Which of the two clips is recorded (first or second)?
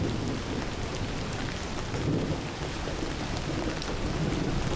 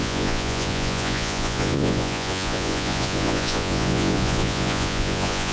first